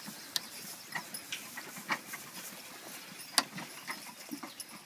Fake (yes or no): no